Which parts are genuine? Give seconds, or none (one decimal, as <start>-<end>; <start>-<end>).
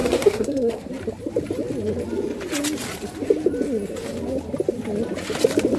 0.9-5.8